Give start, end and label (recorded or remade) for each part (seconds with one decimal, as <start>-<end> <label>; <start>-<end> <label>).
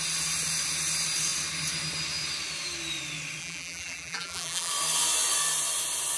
0.0-3.4 recorded; 3.4-4.7 remade; 4.7-6.2 recorded